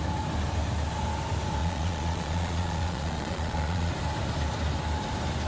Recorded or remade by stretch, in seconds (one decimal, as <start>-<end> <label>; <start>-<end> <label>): 0.0-1.6 recorded; 1.6-3.9 remade; 3.9-5.5 recorded